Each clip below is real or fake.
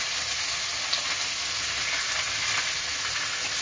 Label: real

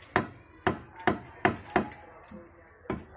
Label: real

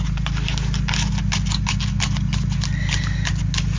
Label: real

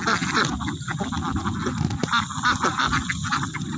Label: real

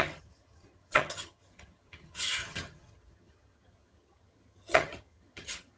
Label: fake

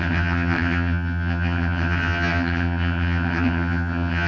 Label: fake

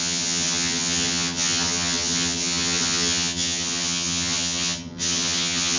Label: fake